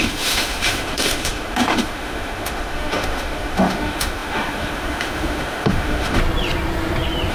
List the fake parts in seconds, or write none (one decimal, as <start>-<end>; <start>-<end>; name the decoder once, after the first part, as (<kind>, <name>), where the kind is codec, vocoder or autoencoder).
0.0-6.2 (autoencoder, DAC-VAE)